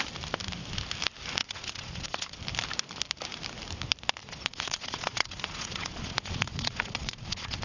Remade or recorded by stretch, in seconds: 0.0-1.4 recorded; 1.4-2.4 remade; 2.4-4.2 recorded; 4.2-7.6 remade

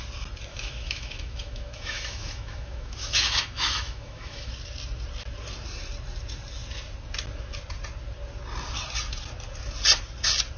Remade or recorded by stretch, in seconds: 0.0-0.5 recorded; 0.5-4.5 remade; 4.5-10.6 recorded

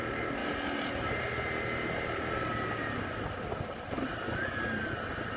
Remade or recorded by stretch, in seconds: 0.0-5.4 recorded

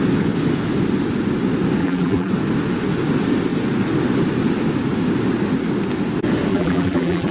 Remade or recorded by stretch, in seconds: 0.0-1.8 recorded; 1.8-2.3 remade; 2.3-6.5 recorded; 6.5-7.3 remade

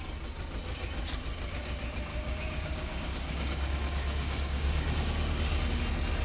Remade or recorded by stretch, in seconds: 0.0-2.1 recorded; 2.1-5.8 remade; 5.8-6.2 recorded

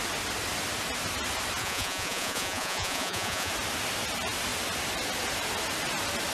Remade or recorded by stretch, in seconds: 0.0-1.6 recorded; 1.6-3.5 remade; 3.5-6.3 recorded